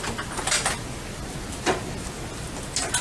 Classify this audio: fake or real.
real